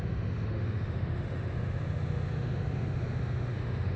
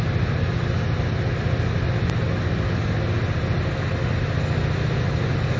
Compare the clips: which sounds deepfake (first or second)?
first